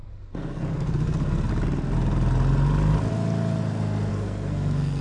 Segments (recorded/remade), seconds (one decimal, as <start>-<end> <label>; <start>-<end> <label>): 0.0-1.5 remade; 1.5-4.1 recorded; 4.1-5.0 remade